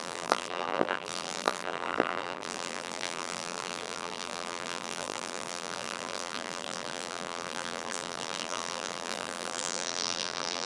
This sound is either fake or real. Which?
fake